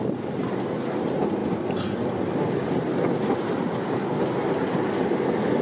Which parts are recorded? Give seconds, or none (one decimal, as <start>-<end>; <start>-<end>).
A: 0.0-5.6